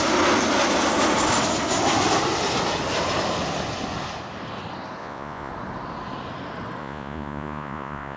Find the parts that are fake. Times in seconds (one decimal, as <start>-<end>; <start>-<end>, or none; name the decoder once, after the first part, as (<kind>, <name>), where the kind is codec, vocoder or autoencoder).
5.0-5.5 (vocoder, Vocos); 6.8-8.2